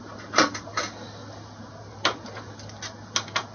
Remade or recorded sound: recorded